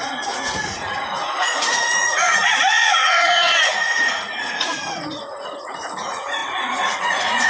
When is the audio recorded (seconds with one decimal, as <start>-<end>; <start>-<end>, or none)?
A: none